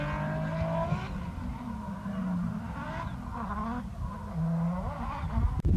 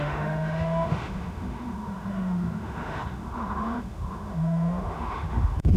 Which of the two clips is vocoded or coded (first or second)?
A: second